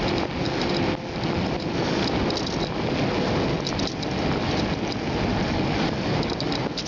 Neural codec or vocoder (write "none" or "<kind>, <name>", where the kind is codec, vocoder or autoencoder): none